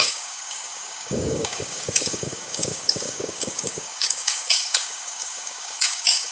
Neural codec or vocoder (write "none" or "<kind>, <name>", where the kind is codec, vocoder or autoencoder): codec, DAC